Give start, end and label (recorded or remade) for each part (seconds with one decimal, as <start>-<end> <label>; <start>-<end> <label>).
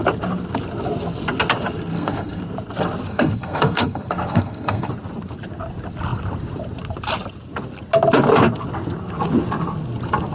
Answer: 0.0-1.9 recorded; 1.9-2.4 remade; 2.4-3.1 recorded; 3.1-4.9 remade; 4.9-10.3 recorded